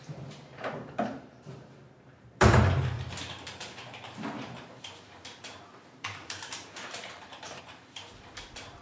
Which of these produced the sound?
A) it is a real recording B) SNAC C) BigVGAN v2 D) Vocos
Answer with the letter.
C